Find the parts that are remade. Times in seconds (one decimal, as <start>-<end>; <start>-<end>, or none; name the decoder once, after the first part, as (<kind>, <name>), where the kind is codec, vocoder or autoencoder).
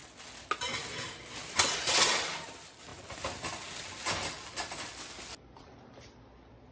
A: none